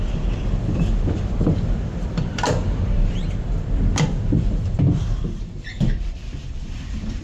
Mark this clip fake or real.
fake